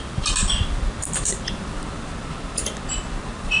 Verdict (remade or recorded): recorded